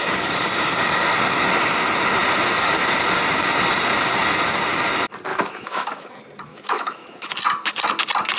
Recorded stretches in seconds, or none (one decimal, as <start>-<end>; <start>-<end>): 0.0-5.3; 6.1-6.5; 7.3-8.4